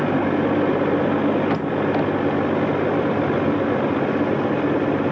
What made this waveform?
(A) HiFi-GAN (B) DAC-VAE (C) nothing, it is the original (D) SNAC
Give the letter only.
C